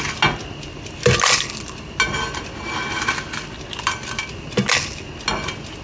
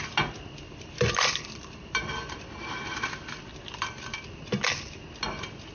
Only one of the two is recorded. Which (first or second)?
first